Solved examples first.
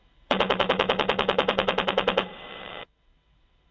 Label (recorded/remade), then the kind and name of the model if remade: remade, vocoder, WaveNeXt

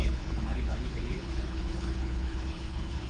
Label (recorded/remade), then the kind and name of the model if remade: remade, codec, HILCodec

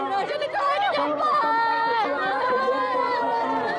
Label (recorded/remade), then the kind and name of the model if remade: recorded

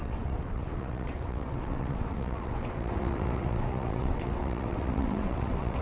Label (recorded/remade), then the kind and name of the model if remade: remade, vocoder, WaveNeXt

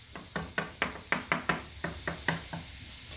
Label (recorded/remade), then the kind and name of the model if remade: recorded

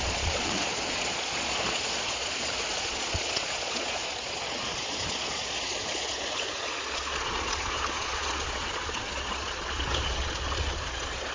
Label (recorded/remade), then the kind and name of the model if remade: remade, vocoder, Vocos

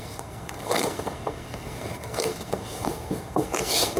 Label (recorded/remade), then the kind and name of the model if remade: remade, codec, SNAC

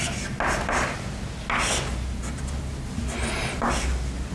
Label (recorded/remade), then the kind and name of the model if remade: recorded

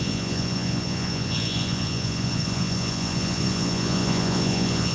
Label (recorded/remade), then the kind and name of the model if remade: remade, vocoder, Vocos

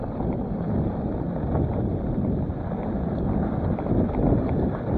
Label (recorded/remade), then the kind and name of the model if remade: recorded